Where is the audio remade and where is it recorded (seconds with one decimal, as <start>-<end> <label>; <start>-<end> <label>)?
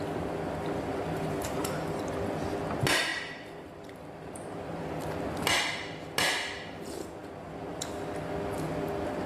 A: 0.0-0.9 recorded; 0.9-1.8 remade; 1.8-3.1 recorded; 3.1-4.8 remade; 4.8-9.3 recorded